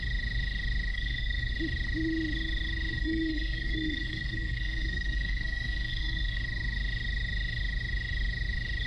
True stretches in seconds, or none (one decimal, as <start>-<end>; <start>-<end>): 0.0-0.9; 1.5-2.9; 6.4-8.9